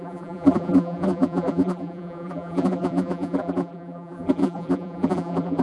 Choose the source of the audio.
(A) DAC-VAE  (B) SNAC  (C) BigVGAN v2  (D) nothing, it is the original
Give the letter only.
C